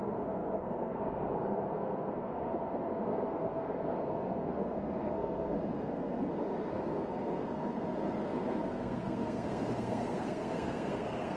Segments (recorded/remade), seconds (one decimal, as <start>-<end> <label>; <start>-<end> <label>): 0.0-11.4 remade